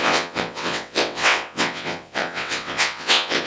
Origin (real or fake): fake